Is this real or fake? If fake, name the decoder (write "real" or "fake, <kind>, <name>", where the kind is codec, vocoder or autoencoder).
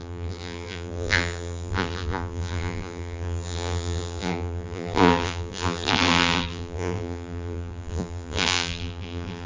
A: fake, vocoder, BigVGAN v2